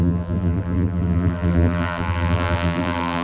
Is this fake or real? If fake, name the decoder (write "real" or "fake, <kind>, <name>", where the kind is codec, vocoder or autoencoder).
fake, vocoder, BigVGAN v2